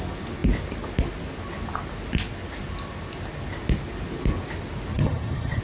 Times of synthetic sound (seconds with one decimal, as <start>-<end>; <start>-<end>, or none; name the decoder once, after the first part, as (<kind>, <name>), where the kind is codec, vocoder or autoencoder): 4.9-5.6 (vocoder, HiFi-GAN)